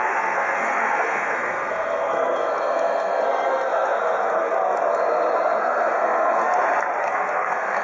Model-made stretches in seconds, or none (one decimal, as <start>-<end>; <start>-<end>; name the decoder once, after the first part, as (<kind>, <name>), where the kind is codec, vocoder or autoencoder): 0.0-4.6 (codec, SNAC); 5.6-6.4; 7.0-7.8